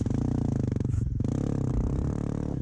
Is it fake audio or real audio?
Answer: real